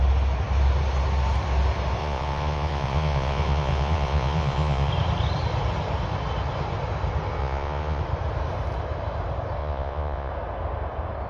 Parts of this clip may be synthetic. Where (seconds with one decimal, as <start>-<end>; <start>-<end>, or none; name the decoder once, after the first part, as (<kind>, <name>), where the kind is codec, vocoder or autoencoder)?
2.0-4.9 (vocoder, Vocos); 7.4-8.0; 9.6-10.3